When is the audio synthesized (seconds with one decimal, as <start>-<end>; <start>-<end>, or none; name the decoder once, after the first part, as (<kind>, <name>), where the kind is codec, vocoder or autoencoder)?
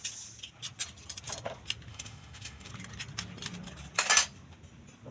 1.9-2.7 (autoencoder, DAC-VAE)